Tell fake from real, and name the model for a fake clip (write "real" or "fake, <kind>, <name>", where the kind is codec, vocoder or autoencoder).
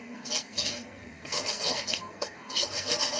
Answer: fake, codec, SNAC